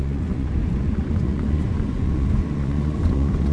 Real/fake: fake